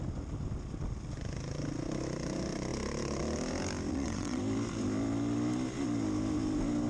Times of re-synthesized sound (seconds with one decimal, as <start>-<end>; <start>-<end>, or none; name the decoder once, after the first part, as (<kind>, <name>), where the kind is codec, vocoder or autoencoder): 3.9-4.4 (vocoder, WaveNeXt)